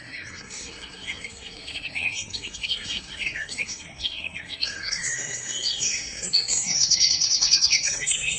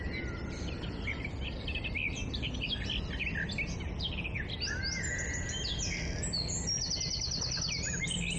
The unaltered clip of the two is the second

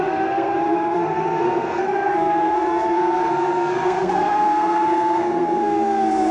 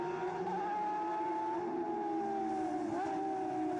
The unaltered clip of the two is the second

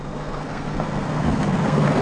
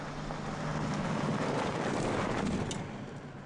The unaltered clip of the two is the second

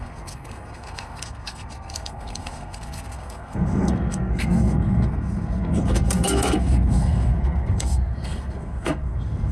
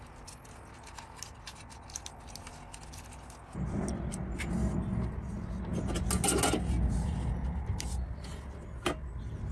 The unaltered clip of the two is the second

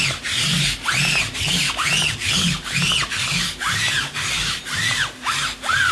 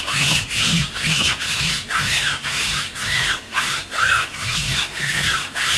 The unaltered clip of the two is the first